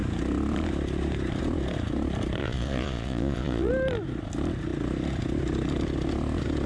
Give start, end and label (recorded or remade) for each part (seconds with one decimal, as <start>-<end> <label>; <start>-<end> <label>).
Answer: 0.0-2.4 recorded; 2.4-3.7 remade; 3.7-6.7 recorded